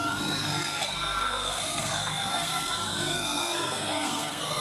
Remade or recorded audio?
remade